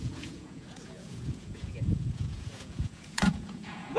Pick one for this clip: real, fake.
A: fake